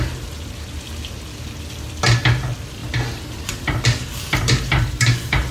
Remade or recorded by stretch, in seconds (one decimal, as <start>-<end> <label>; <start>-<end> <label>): 0.0-2.8 recorded; 2.8-5.5 remade